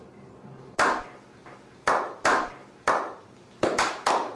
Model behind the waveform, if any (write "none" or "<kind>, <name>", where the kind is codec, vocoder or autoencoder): vocoder, BigVGAN v2